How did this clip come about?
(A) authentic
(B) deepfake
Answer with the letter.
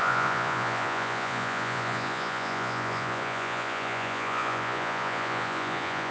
B